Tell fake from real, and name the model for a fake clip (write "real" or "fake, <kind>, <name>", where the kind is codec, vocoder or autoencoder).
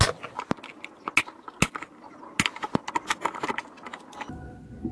real